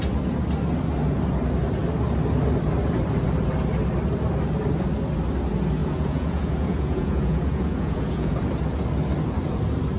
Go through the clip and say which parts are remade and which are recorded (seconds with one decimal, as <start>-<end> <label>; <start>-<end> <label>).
0.0-5.8 recorded; 5.8-8.3 remade; 8.3-10.0 recorded